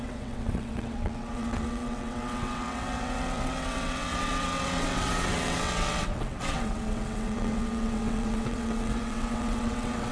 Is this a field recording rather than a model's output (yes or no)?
no